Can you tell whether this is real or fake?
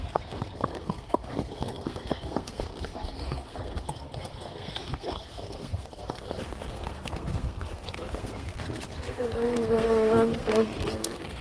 fake